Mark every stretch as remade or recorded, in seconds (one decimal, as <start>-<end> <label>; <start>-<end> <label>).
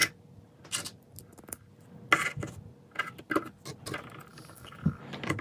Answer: 0.0-4.3 recorded; 4.3-5.0 remade; 5.0-5.4 recorded